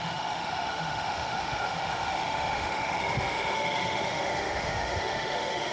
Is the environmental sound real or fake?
fake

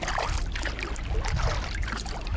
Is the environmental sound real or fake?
real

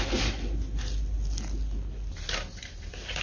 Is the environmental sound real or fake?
real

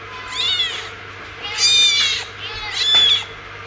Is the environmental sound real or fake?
real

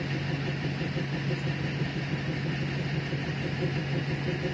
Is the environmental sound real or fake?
real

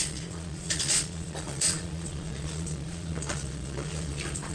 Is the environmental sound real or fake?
fake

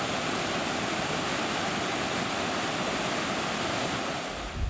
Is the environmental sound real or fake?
fake